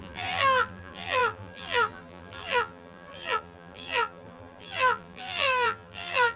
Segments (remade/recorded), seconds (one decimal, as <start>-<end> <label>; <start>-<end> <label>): 0.0-6.4 remade